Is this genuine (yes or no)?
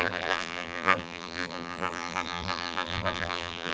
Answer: no